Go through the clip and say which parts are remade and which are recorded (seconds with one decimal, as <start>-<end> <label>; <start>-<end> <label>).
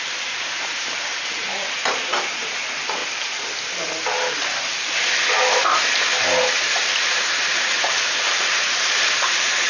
0.0-3.0 remade; 3.0-6.7 recorded; 6.7-9.7 remade